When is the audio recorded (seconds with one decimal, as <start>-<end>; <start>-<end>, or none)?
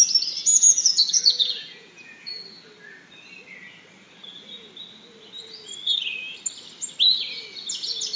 0.0-0.4; 2.4-8.2